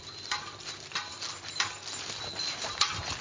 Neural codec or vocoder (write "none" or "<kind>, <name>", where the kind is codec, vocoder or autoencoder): none